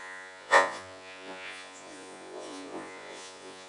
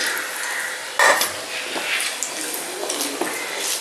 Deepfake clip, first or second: first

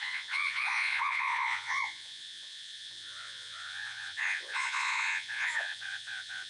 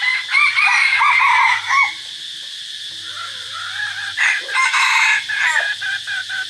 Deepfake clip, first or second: first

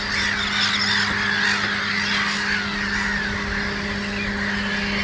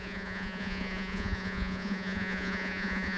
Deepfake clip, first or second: second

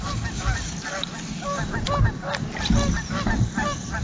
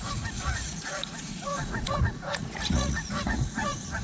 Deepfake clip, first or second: second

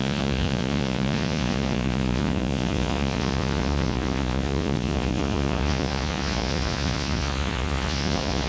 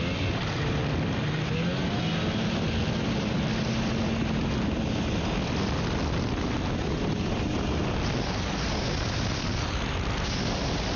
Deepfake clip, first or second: first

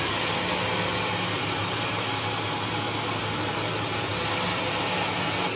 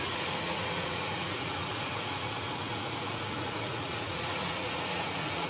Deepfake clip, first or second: second